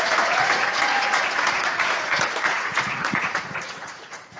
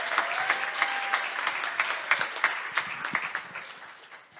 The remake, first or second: first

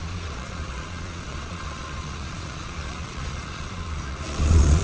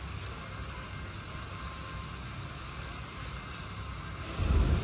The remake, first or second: first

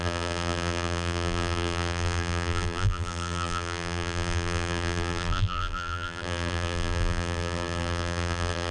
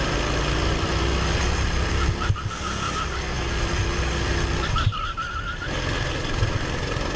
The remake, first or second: first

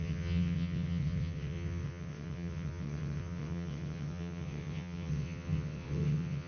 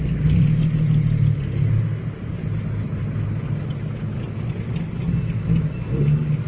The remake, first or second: first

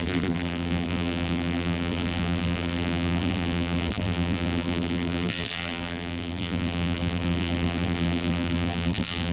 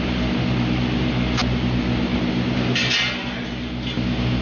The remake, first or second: first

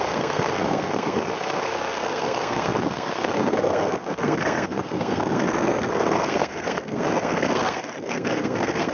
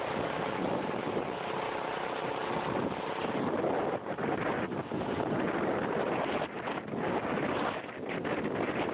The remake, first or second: first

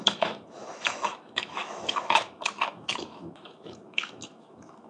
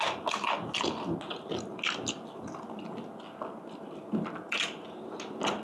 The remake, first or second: first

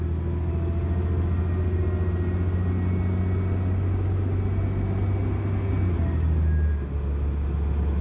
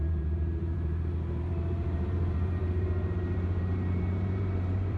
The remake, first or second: second